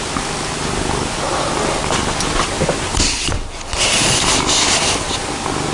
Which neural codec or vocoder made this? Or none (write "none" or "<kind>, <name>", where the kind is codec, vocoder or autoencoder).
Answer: none